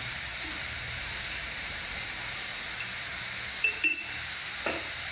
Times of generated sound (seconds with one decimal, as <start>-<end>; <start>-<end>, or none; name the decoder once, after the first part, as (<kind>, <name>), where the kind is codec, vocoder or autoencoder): 0.0-2.5 (vocoder, BigVGAN v2); 3.6-5.1